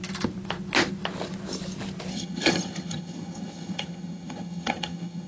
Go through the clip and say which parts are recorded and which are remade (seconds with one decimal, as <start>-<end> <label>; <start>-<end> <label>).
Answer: 0.0-2.1 recorded; 2.1-5.3 remade